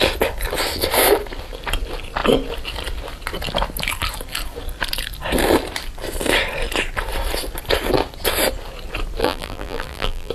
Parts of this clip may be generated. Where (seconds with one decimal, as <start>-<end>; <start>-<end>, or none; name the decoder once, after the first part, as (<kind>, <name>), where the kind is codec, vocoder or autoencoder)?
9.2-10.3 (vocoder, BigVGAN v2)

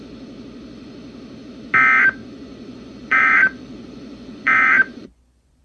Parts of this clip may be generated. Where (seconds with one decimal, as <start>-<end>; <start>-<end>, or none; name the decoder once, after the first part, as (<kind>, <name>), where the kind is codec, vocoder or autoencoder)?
2.2-5.6 (vocoder, Vocos)

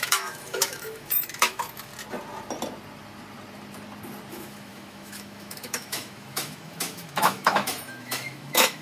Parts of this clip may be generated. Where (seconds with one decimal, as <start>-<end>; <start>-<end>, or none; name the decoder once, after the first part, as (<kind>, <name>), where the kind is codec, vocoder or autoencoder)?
0.0-1.9 (autoencoder, DAC-VAE); 4.3-8.8

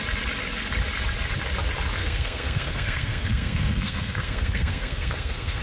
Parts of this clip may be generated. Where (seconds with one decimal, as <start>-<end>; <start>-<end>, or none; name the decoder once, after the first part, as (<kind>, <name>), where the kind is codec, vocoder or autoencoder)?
2.0-5.6 (codec, SNAC)